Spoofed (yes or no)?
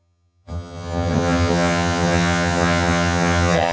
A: yes